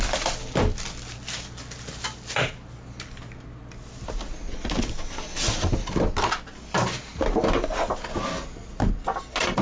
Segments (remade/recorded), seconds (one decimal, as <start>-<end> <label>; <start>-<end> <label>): 0.0-9.6 recorded